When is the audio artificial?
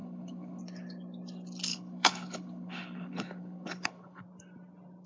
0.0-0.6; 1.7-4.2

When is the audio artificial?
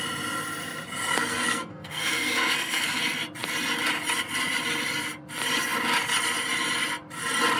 1.1-3.0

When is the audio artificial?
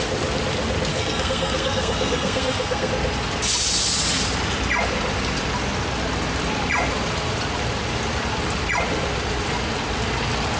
0.9-2.9